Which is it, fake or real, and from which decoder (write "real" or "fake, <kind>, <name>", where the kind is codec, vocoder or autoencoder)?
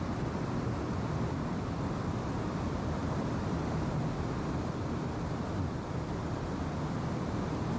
real